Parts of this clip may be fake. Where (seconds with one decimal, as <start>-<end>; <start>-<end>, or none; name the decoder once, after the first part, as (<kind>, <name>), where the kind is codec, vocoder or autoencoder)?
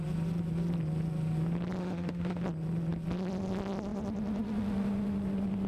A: 1.8-2.4 (autoencoder, DAC-VAE)